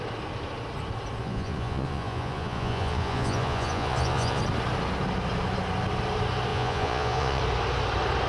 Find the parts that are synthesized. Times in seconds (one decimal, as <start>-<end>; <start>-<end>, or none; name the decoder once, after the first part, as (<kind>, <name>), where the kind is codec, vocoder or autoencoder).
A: 1.2-4.4 (vocoder, Vocos); 6.5-7.4